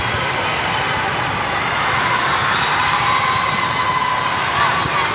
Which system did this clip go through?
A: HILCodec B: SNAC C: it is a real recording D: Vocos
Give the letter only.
C